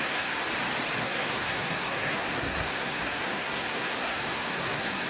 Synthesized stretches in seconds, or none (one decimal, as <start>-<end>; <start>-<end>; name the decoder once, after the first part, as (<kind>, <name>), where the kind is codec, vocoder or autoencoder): 0.0-0.4 (codec, SNAC); 1.0-5.1